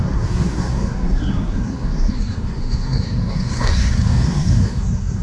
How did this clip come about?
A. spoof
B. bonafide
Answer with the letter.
A